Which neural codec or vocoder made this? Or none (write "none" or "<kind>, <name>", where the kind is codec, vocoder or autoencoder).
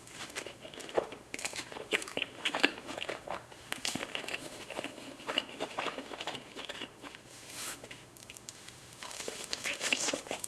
autoencoder, DAC-VAE